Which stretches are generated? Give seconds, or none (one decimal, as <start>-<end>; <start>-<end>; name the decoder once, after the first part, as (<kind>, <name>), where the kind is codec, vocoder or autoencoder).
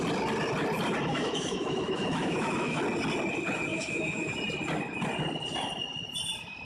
1.1-2.8 (autoencoder, DAC-VAE); 3.7-4.3